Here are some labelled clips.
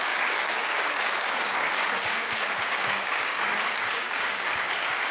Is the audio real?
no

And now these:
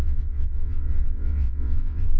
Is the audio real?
no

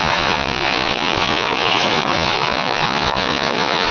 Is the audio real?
no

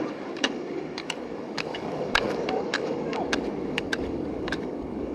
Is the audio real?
no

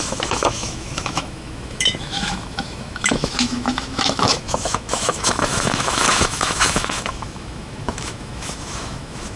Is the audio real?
no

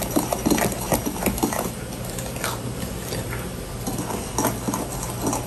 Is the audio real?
yes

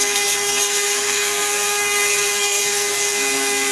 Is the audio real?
no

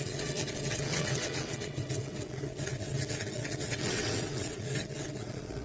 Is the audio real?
no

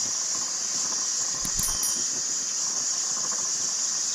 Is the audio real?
yes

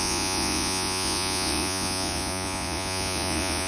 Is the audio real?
no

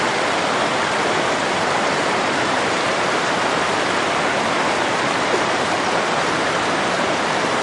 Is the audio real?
yes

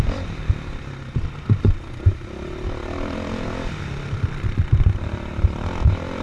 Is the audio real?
yes